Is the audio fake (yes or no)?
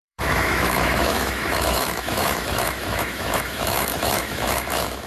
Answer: yes